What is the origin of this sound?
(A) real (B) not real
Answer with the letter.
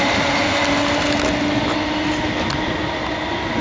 A